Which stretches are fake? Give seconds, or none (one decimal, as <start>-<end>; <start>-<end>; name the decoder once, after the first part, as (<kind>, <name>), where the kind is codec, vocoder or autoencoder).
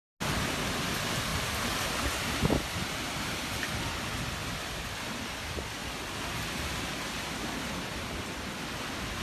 1.3-3.8 (vocoder, BigVGAN v2)